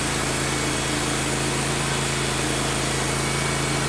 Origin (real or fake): real